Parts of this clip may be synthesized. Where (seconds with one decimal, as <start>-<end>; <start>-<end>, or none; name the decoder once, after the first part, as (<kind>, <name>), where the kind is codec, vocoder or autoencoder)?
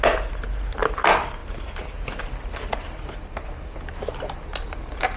none